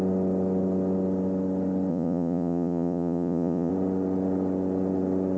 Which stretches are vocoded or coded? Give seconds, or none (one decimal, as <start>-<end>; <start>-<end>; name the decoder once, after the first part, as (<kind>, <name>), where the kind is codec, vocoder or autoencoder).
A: 1.9-3.7 (vocoder, Vocos)